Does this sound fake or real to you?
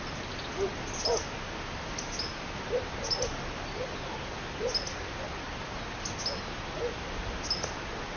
real